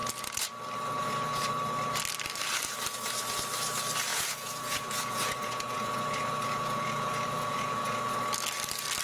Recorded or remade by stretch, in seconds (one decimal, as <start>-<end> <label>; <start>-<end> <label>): 0.0-1.0 recorded; 1.0-1.5 remade; 1.5-4.1 recorded; 4.1-8.2 remade; 8.2-9.0 recorded